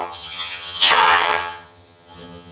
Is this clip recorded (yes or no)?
no